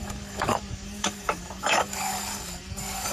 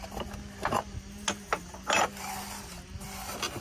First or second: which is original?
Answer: second